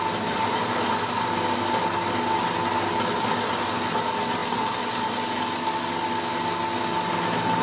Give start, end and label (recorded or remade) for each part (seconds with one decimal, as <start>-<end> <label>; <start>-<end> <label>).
0.0-7.6 recorded